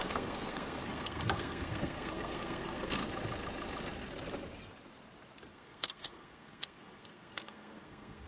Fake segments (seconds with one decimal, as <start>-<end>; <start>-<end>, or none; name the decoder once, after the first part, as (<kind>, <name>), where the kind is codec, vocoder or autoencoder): 0.0-3.0 (codec, SNAC); 5.5-8.3